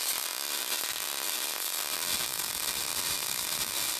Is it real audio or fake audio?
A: real